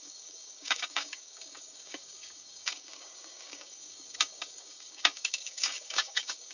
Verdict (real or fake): fake